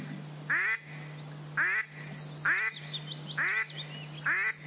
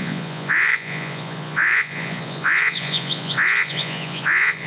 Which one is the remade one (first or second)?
second